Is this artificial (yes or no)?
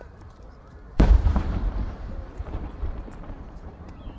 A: yes